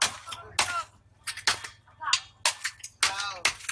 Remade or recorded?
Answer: recorded